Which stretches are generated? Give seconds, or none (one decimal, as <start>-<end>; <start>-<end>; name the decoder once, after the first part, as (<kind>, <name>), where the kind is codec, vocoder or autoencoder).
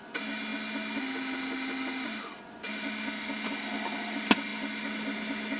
none